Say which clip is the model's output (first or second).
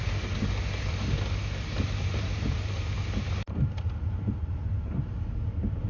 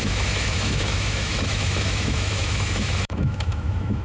second